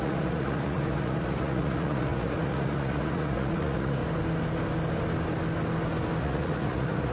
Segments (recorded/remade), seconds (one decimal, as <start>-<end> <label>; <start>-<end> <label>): 0.0-4.0 remade; 4.0-6.2 recorded; 6.2-7.1 remade